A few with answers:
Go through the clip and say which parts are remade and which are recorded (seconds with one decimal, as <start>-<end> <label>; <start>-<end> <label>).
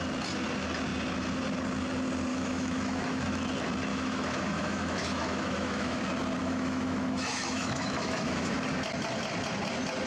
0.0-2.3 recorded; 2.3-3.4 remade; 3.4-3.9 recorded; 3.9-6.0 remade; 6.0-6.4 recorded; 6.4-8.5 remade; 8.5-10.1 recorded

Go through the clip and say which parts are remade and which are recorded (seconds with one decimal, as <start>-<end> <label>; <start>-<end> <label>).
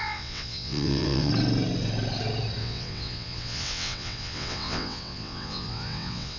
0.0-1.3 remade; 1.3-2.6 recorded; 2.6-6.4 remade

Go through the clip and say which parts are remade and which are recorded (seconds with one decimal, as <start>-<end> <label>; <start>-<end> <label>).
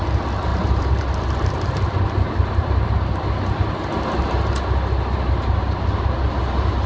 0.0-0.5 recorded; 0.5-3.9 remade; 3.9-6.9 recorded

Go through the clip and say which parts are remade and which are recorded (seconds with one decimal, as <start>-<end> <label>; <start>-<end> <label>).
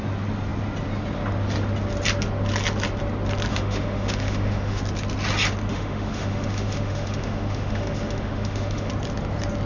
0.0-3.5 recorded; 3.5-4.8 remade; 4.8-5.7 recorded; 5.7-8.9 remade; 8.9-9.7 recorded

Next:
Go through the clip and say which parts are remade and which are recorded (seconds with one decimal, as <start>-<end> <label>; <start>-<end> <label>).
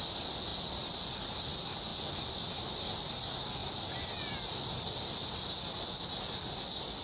0.0-0.5 recorded; 0.5-1.3 remade; 1.3-3.6 recorded; 3.6-5.2 remade; 5.2-7.0 recorded